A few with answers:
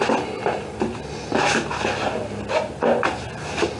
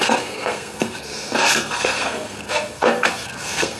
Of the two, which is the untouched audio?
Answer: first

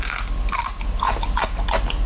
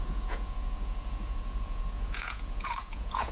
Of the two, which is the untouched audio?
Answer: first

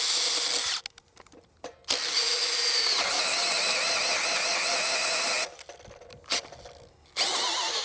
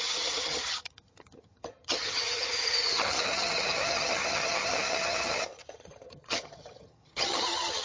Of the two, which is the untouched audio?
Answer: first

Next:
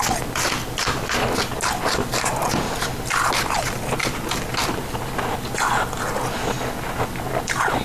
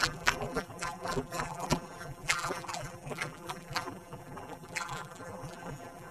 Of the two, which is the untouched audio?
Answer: first